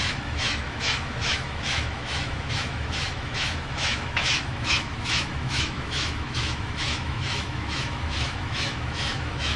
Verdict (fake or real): fake